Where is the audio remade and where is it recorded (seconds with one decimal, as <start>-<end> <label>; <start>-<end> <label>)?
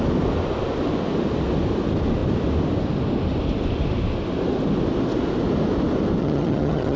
0.0-6.2 recorded; 6.2-7.0 remade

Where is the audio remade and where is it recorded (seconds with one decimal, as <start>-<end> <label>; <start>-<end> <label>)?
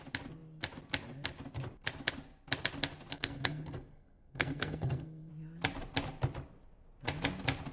0.0-3.1 recorded; 3.1-5.3 remade; 5.3-7.7 recorded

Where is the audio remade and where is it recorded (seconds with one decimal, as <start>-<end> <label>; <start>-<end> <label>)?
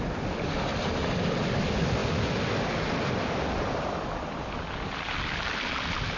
0.0-6.2 recorded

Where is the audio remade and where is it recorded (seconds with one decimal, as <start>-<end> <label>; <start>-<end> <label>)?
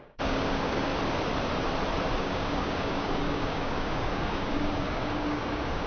0.0-0.9 remade; 0.9-2.2 recorded; 2.2-5.9 remade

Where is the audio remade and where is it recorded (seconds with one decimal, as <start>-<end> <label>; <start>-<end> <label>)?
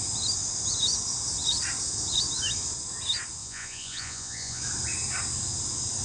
0.0-3.4 recorded; 3.4-4.6 remade; 4.6-6.0 recorded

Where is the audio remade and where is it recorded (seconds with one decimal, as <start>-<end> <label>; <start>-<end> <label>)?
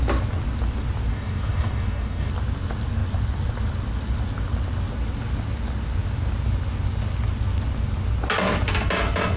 0.0-1.1 recorded; 1.1-2.3 remade; 2.3-9.4 recorded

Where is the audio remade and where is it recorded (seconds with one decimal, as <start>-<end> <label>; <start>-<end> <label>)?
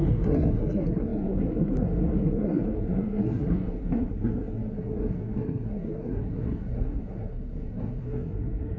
0.0-8.8 remade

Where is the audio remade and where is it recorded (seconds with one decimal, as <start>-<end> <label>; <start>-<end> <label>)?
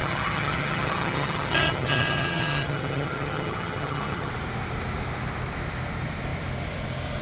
0.0-4.3 remade; 4.3-7.2 recorded